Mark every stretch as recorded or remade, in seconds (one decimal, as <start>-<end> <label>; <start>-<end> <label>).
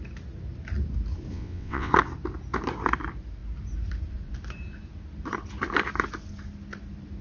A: 0.0-1.3 recorded; 1.3-1.9 remade; 1.9-7.2 recorded